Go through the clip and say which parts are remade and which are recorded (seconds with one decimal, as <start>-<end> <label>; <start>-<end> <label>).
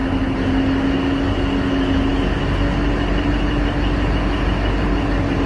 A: 0.0-5.5 recorded